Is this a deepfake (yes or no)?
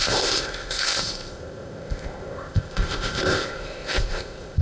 yes